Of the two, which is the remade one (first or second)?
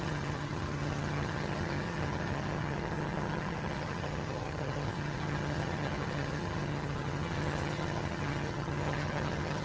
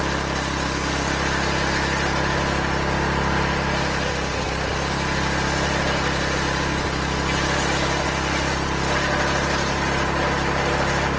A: first